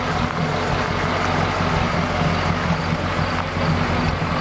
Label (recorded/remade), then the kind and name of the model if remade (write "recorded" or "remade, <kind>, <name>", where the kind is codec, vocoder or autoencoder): recorded